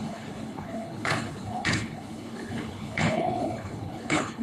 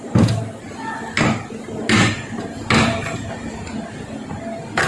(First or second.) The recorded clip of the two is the second